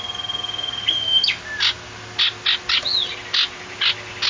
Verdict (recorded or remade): recorded